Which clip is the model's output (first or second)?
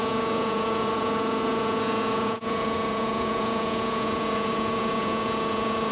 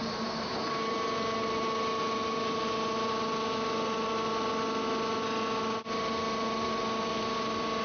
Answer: first